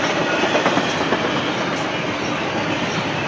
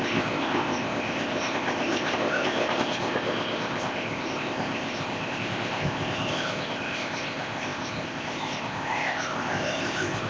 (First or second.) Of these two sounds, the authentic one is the first